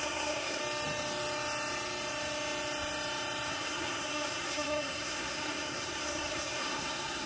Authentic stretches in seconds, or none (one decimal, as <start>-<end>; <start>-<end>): 0.6-3.5